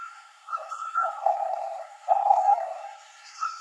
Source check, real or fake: fake